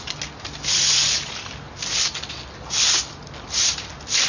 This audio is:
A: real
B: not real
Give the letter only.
A